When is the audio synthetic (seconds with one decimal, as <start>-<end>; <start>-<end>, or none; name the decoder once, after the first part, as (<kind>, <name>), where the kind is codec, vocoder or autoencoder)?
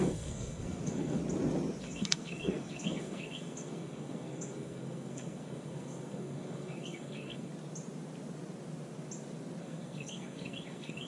0.0-1.2 (codec, SNAC); 1.8-7.5; 9.6-11.1